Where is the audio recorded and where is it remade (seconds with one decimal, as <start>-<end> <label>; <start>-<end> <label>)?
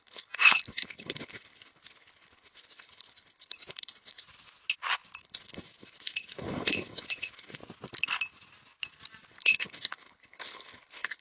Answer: 0.0-4.2 remade; 4.2-5.2 recorded; 5.2-7.6 remade; 7.6-9.3 recorded; 9.3-11.2 remade